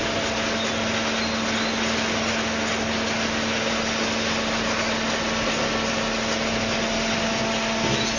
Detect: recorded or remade recorded